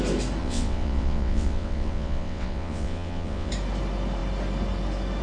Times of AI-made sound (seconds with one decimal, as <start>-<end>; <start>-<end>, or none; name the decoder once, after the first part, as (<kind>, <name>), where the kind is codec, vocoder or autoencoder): 0.4-3.5 (vocoder, WaveNeXt)